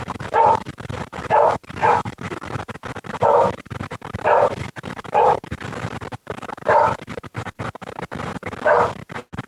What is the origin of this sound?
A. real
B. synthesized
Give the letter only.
B